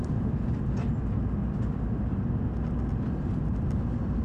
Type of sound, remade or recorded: recorded